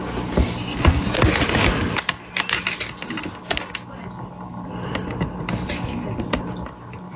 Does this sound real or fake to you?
real